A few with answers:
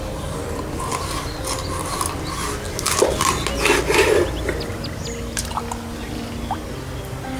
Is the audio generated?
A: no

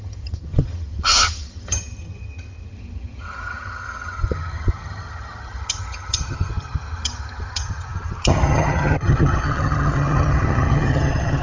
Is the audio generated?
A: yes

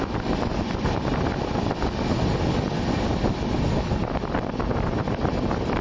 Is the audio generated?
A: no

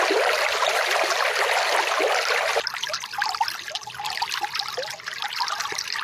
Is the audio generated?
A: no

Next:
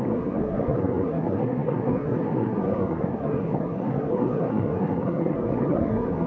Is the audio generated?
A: yes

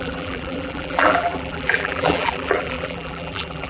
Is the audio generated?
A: yes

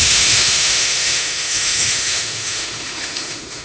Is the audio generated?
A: yes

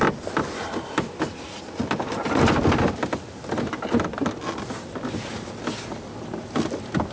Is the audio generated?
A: no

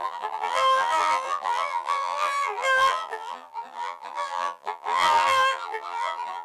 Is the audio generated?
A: yes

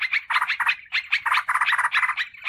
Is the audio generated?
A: no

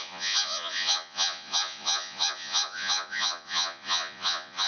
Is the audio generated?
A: yes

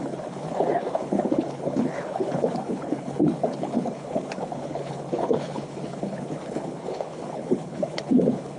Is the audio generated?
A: yes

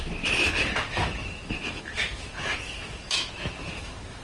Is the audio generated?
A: yes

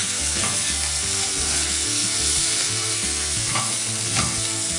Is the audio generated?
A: yes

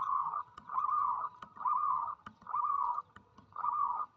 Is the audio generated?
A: yes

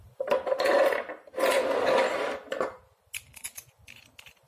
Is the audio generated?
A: no